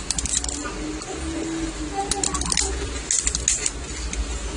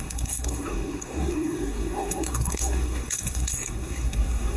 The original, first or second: first